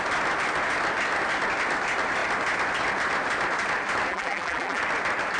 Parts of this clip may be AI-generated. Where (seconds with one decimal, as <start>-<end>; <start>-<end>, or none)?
4.1-4.8